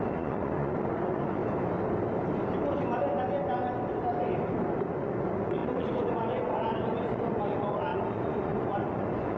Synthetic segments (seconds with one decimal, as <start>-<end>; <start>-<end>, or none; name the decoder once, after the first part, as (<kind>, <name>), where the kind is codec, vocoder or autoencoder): 0.0-1.4 (vocoder, Vocos); 4.9-9.4